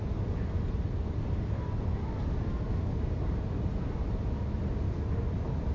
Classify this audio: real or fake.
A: real